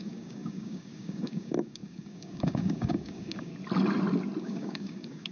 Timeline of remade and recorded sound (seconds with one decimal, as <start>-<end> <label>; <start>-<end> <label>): 0.0-3.5 remade; 3.5-4.4 recorded; 4.4-5.3 remade